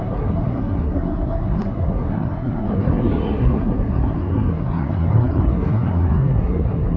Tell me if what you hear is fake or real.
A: fake